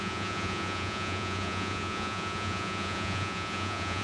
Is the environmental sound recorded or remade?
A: remade